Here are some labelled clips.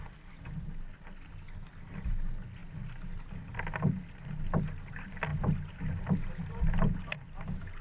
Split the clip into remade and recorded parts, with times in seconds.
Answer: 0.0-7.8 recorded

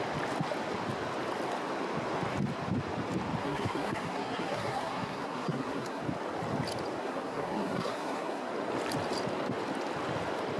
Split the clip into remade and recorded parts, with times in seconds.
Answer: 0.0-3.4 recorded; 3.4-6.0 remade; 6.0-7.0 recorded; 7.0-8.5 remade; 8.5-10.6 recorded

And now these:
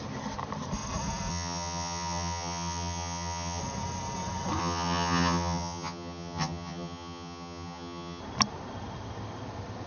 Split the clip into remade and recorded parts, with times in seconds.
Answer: 0.0-1.3 recorded; 1.3-3.6 remade; 3.6-4.6 recorded; 4.6-8.2 remade; 8.2-9.9 recorded